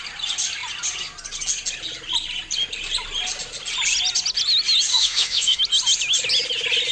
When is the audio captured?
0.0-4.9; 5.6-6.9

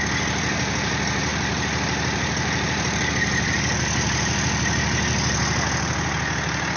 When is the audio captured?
0.0-1.3; 3.1-6.8

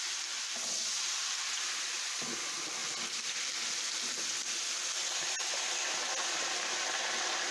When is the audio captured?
0.0-7.5

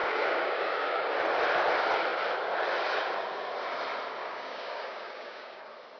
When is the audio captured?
1.1-4.2; 5.6-6.0

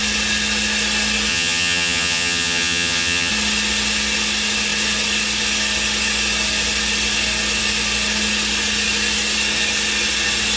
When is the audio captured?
0.0-1.3; 3.3-10.6

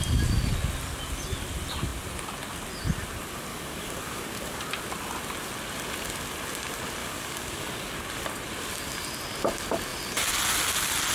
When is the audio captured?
0.0-3.5; 4.6-7.0; 7.9-11.1

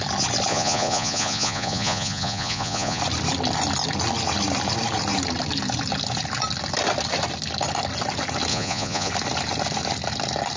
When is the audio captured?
0.0-0.5; 3.0-8.5; 9.1-10.6

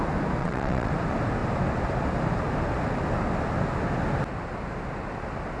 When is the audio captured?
0.0-0.4; 0.9-5.6